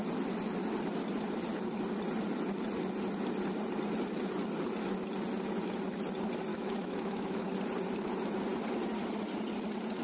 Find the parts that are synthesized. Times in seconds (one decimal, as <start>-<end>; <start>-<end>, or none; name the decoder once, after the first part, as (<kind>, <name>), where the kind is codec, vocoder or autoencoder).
6.5-7.5 (autoencoder, DAC-VAE)